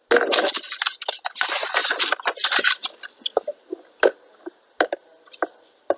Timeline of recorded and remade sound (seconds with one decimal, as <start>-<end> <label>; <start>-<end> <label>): 0.0-6.0 recorded